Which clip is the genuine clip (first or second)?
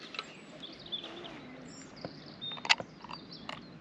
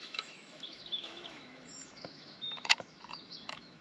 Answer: first